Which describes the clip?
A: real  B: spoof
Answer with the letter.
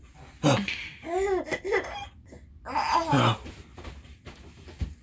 A